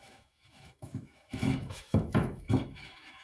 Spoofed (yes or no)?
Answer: yes